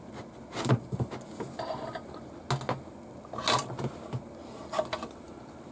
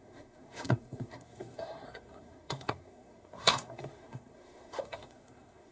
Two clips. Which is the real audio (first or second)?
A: first